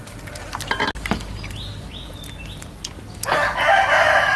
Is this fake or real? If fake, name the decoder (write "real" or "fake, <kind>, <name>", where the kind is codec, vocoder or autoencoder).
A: real